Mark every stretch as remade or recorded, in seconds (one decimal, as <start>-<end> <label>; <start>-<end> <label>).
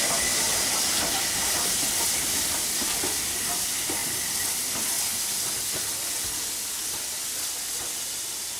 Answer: 0.0-0.5 recorded; 0.5-2.2 remade; 2.2-8.6 recorded